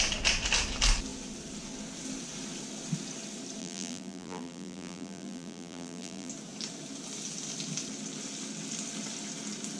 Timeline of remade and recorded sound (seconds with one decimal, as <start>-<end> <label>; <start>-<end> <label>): 0.0-3.6 recorded; 3.6-6.3 remade; 6.3-9.8 recorded